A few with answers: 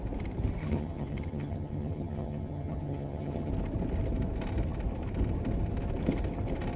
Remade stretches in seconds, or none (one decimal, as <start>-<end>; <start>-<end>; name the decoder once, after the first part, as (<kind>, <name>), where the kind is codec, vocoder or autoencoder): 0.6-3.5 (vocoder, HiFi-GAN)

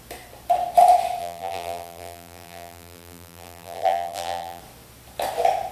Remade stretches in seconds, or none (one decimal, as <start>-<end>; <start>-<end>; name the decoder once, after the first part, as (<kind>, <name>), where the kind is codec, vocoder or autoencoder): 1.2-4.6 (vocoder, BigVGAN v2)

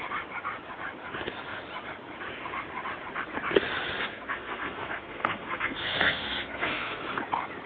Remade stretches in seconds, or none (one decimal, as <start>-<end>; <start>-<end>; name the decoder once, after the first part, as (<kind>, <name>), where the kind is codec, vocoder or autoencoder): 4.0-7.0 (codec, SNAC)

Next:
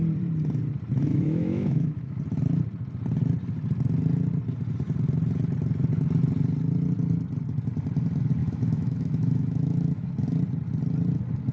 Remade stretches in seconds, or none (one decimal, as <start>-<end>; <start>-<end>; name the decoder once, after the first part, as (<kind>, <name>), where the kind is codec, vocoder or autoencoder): 1.1-2.2 (autoencoder, DAC-VAE); 8.4-10.1